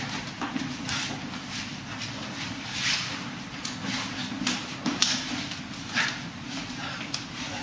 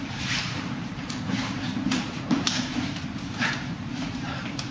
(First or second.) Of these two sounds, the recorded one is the first